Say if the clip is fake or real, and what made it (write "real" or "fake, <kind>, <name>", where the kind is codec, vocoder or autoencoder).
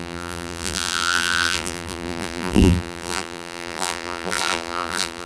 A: fake, vocoder, BigVGAN v2